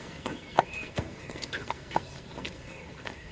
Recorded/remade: remade